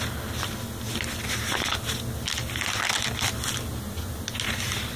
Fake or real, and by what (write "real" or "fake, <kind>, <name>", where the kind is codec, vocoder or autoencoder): real